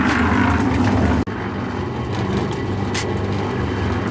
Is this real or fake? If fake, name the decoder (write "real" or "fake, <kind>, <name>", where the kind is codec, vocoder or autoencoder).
real